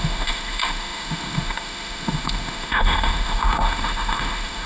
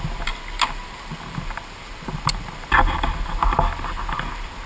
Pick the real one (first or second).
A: second